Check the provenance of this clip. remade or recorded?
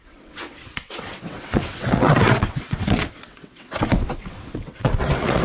remade